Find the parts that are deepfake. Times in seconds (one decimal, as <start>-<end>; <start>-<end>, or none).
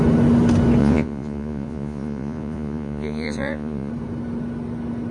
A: 0.8-3.9